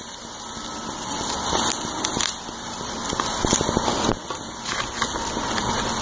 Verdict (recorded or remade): recorded